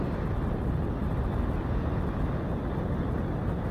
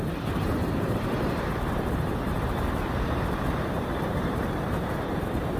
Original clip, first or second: first